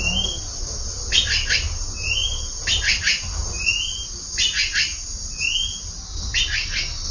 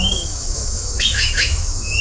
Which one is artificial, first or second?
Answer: second